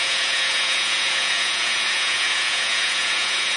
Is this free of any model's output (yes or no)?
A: no